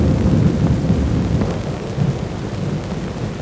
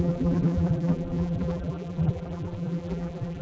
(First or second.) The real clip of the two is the first